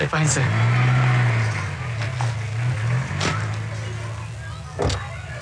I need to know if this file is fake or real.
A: real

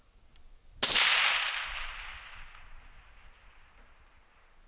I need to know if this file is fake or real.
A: real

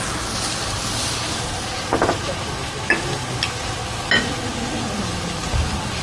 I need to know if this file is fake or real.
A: real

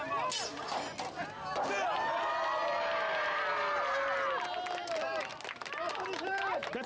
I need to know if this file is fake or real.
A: real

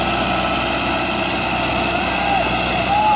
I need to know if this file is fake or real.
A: real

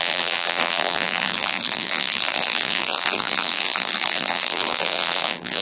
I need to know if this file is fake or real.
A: fake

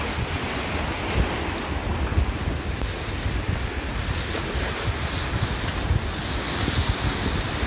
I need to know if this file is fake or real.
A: real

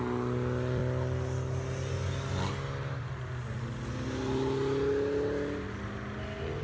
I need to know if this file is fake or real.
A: real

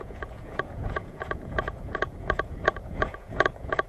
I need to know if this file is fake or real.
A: fake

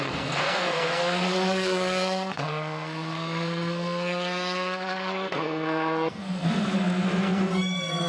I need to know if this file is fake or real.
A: fake